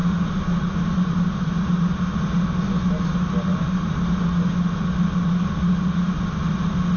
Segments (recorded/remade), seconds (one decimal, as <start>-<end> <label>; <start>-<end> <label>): 0.0-7.0 recorded